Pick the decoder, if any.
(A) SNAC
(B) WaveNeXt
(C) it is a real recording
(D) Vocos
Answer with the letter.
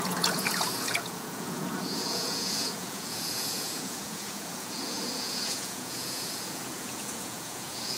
D